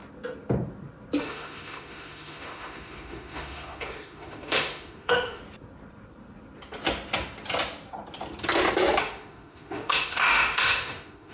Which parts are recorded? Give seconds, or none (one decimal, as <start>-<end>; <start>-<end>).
0.0-1.2; 5.4-9.0